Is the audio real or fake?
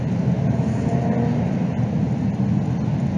real